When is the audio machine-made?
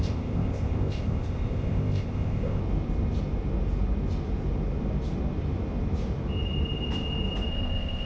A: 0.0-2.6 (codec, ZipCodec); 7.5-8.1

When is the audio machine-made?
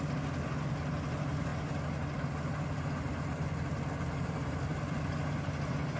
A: none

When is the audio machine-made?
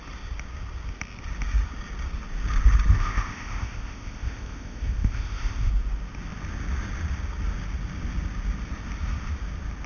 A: 2.9-5.7 (codec, ZipCodec)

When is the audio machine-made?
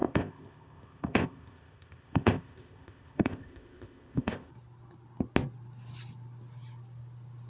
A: 0.0-4.5 (codec, ZipCodec)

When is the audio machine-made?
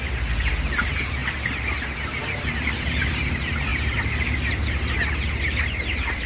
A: none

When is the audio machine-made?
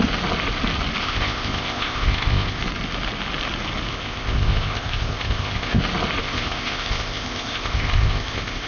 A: 1.0-2.6 (codec, ZipCodec); 3.9-5.8; 6.2-8.7